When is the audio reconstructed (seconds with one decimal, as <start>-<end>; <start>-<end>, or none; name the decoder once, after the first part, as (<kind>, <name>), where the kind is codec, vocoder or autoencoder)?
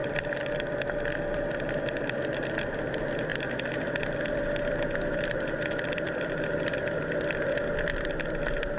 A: 0.0-8.8 (vocoder, BigVGAN v2)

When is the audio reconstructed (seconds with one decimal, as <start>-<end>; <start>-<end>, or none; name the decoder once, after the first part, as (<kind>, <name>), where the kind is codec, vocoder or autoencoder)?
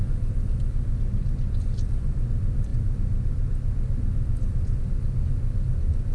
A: none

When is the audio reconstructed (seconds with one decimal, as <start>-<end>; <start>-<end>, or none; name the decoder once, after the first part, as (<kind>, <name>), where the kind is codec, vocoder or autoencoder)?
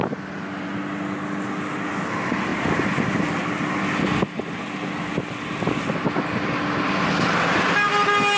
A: none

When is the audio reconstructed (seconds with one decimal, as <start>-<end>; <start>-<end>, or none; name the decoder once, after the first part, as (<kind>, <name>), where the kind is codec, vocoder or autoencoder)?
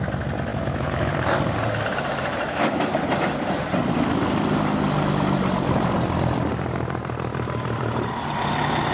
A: 0.5-1.1 (autoencoder, DAC-VAE); 2.3-2.9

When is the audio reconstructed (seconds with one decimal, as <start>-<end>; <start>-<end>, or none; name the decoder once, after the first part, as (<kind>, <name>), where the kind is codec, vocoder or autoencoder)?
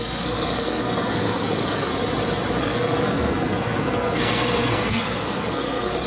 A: 0.0-1.9 (codec, SNAC); 2.6-6.1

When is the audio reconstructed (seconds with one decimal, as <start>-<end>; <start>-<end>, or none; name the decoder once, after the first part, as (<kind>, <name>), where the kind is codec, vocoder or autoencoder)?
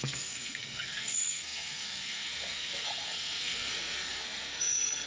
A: 0.0-5.1 (codec, SNAC)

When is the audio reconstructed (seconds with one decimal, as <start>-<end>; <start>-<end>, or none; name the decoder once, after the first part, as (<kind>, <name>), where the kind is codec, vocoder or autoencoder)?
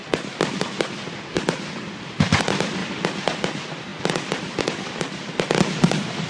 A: 0.9-2.8 (vocoder, BigVGAN v2); 3.4-6.3